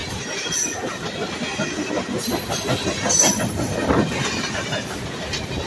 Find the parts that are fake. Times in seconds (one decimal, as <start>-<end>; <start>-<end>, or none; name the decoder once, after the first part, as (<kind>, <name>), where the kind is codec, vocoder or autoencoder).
none